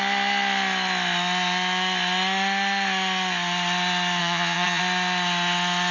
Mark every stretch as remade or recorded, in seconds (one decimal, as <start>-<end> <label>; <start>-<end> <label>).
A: 0.0-4.2 recorded; 4.2-4.8 remade; 4.8-5.9 recorded